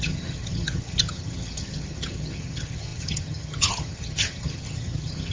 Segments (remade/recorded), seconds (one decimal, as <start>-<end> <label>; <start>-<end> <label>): 0.0-5.3 remade